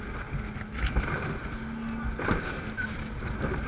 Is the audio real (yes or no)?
yes